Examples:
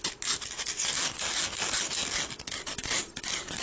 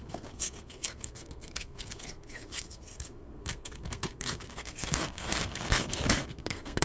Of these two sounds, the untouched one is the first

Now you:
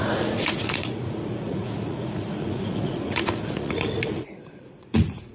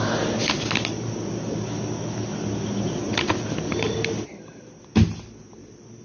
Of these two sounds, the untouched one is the second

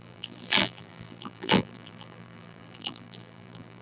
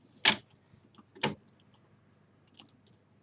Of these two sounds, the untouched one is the second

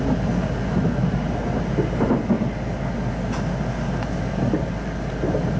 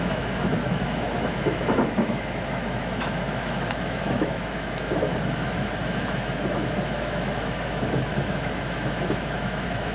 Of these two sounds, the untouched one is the first